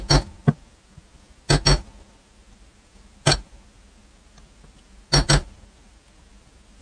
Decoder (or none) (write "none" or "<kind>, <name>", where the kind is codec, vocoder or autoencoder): none